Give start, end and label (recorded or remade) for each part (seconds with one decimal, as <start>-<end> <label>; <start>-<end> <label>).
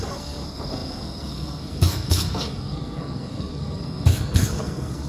0.0-5.1 remade